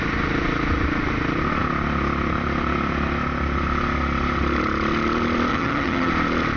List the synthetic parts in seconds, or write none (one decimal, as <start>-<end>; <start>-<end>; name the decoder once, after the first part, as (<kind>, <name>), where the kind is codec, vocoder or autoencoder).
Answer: 5.5-6.1 (vocoder, HiFi-GAN)